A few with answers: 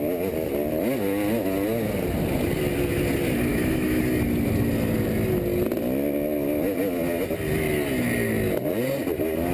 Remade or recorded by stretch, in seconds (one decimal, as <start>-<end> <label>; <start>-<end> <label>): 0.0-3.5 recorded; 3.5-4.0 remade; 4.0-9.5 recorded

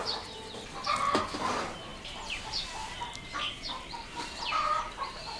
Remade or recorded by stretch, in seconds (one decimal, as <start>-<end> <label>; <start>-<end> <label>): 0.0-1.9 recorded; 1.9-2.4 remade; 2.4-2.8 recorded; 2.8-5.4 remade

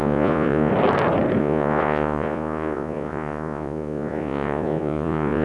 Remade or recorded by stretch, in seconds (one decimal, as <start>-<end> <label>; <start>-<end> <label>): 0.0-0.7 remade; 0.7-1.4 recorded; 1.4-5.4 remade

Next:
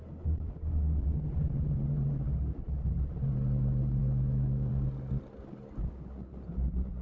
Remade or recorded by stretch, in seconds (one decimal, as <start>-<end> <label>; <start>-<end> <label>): 0.0-4.0 recorded; 4.0-4.7 remade; 4.7-7.0 recorded